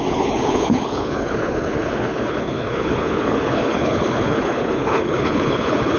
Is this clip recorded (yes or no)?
no